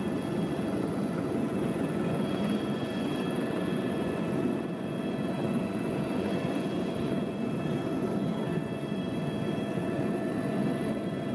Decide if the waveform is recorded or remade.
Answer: remade